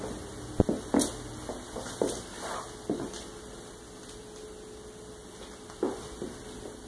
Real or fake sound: real